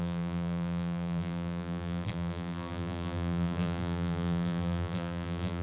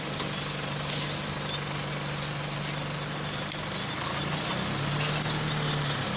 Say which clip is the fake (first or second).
first